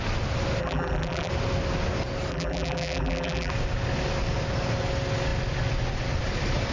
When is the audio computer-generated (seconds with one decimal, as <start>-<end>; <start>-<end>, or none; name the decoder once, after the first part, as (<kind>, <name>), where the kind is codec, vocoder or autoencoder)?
0.6-1.3 (vocoder, BigVGAN v2); 2.3-3.5